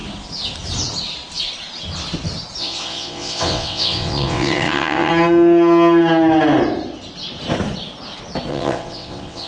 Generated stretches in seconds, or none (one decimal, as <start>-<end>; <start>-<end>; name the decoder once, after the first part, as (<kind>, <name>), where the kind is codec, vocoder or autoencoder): 2.6-5.1 (vocoder, WaveNeXt); 8.5-9.5